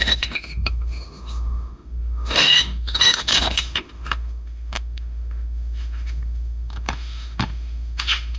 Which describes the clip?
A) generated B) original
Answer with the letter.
A